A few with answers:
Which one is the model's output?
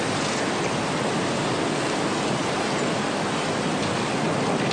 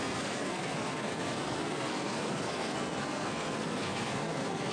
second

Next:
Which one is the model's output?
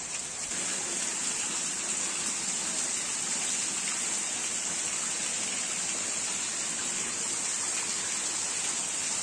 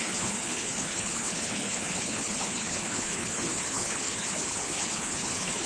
second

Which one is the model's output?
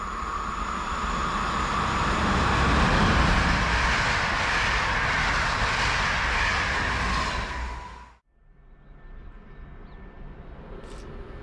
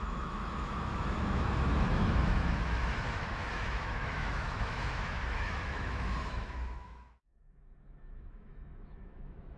second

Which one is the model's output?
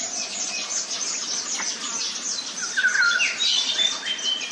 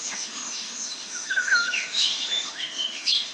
second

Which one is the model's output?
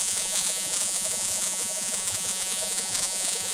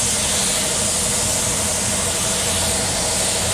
first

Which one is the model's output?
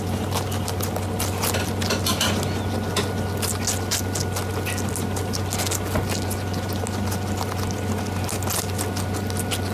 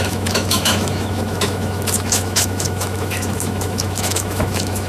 second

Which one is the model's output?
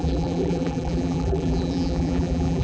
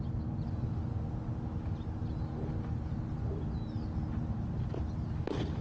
first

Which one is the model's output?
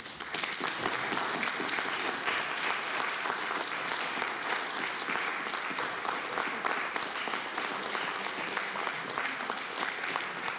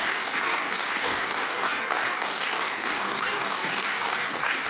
second